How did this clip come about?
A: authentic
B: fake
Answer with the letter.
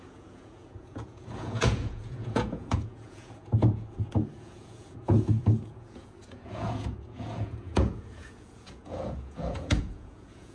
B